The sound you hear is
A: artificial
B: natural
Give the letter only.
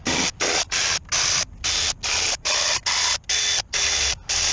B